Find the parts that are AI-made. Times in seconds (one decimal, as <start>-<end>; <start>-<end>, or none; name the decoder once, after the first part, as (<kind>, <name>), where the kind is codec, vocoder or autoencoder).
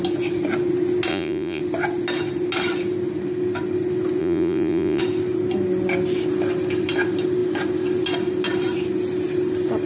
1.1-1.6 (vocoder, Vocos); 4.2-5.0